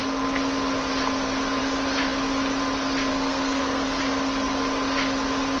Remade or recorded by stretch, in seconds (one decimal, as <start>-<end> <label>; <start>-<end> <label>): 0.0-3.1 recorded; 3.1-4.0 remade; 4.0-5.6 recorded